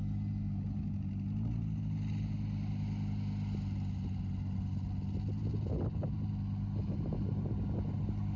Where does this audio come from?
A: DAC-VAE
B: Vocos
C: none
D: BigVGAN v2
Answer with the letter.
C